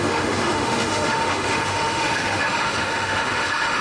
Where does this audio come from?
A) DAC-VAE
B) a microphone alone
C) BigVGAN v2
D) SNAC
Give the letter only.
A